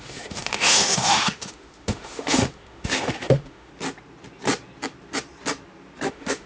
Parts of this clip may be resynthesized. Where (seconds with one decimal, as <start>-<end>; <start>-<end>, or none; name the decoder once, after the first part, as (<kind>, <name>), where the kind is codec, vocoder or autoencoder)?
0.0-3.7 (autoencoder, DAC-VAE); 6.1-6.5